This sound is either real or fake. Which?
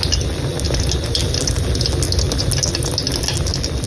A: real